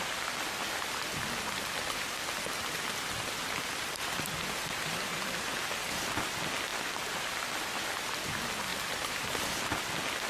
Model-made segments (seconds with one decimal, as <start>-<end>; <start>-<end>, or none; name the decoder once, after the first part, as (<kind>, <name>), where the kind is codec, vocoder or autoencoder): 8.7-9.8 (vocoder, BigVGAN v2)